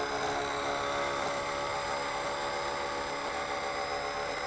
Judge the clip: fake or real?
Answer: real